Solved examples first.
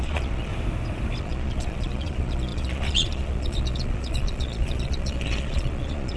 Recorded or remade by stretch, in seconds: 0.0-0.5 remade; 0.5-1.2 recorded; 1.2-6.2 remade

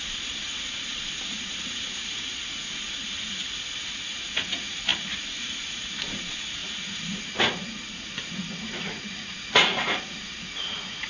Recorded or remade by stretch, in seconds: 0.0-11.1 remade